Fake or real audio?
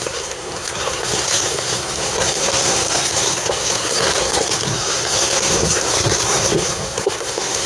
fake